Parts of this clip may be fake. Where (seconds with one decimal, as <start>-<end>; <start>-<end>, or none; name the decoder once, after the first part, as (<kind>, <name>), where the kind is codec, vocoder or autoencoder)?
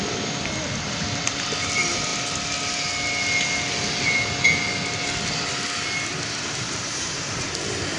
6.1-7.6 (vocoder, BigVGAN v2)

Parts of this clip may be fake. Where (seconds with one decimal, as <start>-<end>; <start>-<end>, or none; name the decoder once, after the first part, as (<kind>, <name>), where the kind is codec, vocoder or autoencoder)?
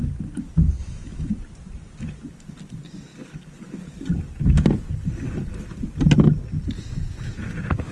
0.8-1.3 (autoencoder, DAC-VAE)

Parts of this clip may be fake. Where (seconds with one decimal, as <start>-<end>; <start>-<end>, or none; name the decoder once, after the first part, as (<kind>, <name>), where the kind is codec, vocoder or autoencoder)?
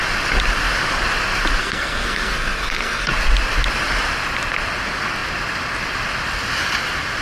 1.6-3.1 (codec, SNAC)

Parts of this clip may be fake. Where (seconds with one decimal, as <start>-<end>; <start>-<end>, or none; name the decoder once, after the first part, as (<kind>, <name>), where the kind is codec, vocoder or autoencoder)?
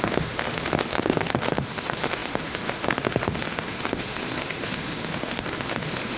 0.0-6.2 (autoencoder, DAC-VAE)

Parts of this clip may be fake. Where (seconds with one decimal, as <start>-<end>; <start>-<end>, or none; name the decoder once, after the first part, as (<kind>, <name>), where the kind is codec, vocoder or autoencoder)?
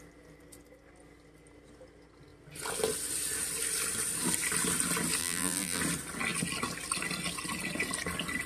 5.2-5.8 (vocoder, BigVGAN v2)